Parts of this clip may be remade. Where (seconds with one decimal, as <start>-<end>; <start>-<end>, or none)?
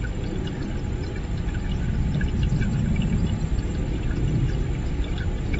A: 1.9-2.6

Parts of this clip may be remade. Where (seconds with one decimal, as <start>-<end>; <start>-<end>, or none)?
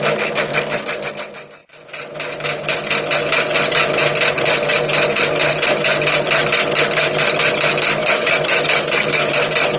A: 0.5-1.1; 8.0-9.3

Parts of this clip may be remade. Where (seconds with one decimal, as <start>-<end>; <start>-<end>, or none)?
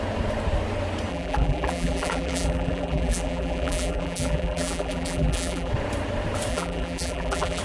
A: 1.1-5.7; 6.5-7.6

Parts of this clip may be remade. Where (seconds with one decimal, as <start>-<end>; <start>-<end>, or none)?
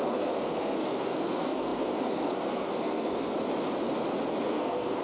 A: 0.0-3.3; 4.4-5.0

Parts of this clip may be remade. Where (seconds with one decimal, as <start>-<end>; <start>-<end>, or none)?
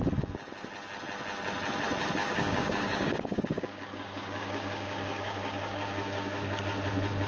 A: 2.2-6.6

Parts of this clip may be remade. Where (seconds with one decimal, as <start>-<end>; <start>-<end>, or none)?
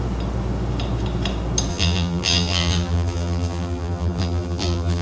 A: 1.7-5.0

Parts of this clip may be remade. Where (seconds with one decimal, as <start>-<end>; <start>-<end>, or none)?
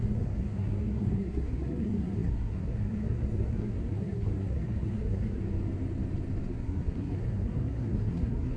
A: 0.0-5.4; 6.5-8.6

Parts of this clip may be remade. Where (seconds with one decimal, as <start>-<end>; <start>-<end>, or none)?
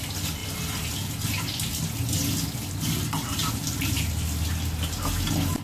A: 3.4-4.0